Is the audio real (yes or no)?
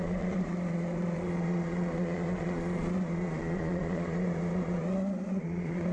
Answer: no